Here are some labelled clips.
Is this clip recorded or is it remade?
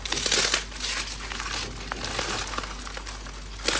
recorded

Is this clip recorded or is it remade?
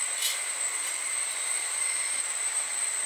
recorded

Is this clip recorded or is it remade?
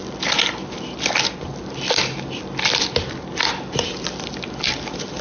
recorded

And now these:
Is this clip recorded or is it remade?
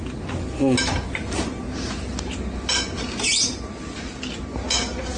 recorded